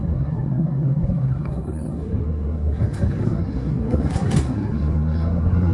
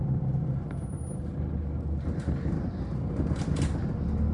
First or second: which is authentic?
second